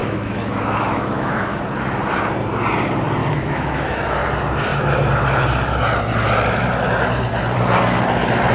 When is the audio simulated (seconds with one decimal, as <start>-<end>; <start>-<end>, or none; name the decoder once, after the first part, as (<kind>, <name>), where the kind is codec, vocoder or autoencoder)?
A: 0.0-1.6 (autoencoder, DAC-VAE); 3.2-4.2